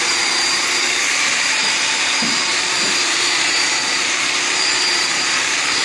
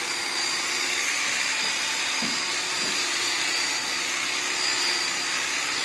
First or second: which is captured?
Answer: second